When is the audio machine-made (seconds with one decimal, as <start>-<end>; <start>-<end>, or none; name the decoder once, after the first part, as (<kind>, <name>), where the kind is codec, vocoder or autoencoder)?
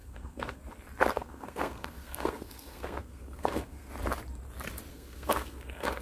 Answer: 0.0-0.6 (codec, SNAC); 1.1-3.9; 4.9-6.0